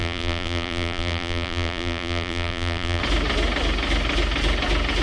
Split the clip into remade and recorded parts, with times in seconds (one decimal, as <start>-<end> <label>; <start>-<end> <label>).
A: 0.0-3.0 remade; 3.0-5.0 recorded